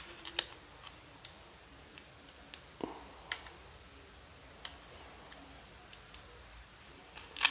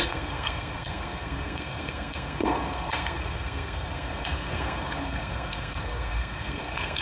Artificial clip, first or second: second